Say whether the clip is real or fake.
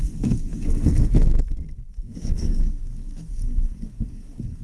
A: fake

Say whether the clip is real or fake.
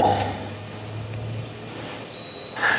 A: fake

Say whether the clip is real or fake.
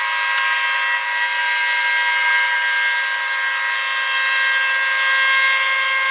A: real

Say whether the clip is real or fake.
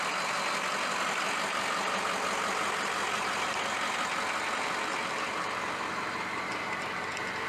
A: real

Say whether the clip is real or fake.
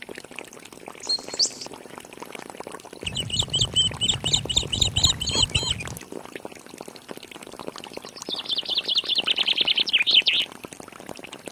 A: real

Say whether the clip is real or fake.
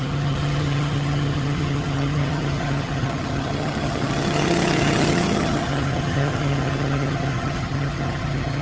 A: fake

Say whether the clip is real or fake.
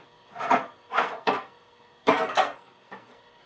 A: fake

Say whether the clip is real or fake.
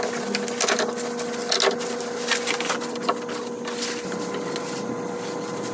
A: real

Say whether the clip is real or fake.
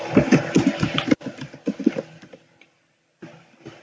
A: real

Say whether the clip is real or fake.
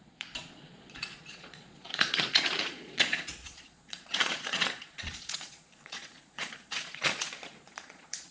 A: fake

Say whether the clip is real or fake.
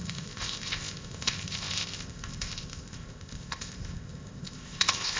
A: fake